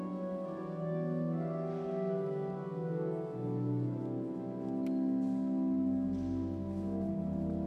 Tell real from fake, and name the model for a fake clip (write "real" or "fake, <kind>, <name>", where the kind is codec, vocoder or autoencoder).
real